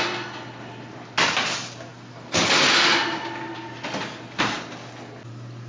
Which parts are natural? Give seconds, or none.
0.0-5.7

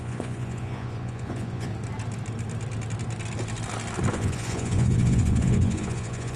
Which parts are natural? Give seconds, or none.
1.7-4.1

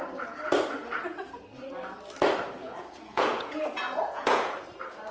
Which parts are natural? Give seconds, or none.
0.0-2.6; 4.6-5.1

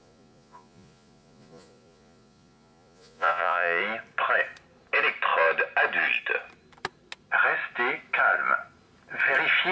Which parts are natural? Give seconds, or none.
3.8-9.7